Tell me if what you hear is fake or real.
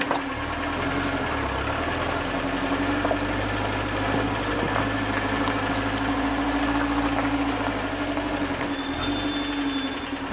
real